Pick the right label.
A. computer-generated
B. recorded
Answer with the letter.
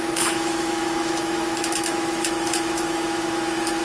A